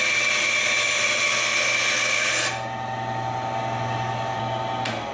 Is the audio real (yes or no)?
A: yes